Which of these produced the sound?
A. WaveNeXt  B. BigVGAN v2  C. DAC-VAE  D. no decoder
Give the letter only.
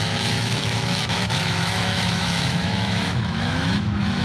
C